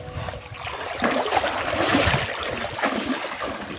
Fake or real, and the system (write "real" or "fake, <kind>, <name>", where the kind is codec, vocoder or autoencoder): real